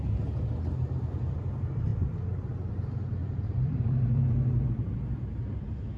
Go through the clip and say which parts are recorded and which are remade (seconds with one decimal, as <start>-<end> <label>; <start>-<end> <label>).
0.0-3.2 recorded; 3.2-4.9 remade; 4.9-6.0 recorded